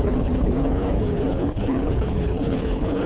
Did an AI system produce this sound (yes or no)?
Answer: yes